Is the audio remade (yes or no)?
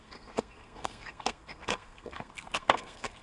yes